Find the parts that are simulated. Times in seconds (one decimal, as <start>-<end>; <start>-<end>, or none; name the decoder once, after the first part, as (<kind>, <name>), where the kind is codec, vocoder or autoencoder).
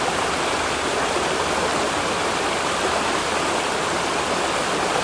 0.0-1.7 (vocoder, BigVGAN v2)